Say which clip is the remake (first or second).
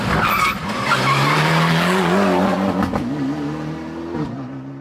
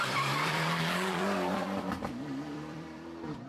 second